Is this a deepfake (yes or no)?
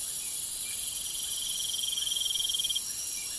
no